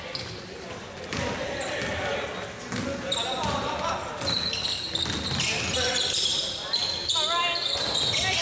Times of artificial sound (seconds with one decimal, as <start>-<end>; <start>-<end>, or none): none